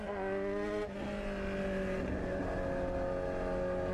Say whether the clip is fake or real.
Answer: real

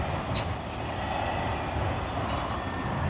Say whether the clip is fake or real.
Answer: real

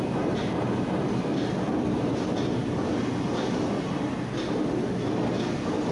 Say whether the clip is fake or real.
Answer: fake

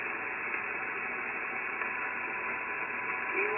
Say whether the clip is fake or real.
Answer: real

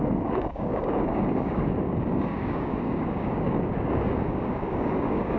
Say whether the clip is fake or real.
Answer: fake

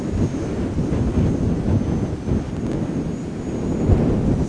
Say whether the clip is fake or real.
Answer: real